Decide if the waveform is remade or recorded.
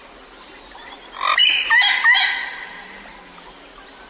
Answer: recorded